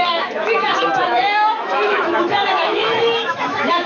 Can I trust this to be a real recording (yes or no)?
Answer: no